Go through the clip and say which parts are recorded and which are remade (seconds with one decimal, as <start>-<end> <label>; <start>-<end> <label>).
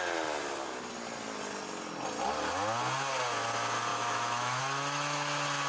0.0-3.9 recorded; 3.9-4.6 remade; 4.6-5.7 recorded